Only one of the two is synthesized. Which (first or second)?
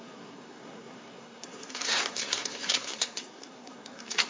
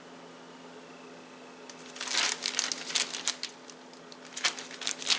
first